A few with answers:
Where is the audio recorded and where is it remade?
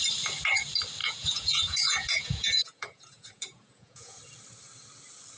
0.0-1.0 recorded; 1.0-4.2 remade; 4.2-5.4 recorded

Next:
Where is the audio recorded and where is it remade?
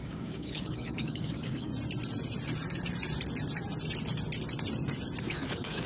0.0-1.7 remade; 1.7-5.2 recorded; 5.2-5.9 remade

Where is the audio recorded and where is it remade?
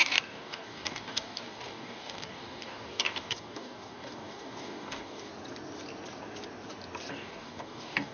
0.0-5.3 remade; 5.3-7.1 recorded; 7.1-8.1 remade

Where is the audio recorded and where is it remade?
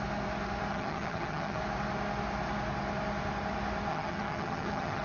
0.0-0.7 recorded; 0.7-1.6 remade; 1.6-3.9 recorded; 3.9-5.0 remade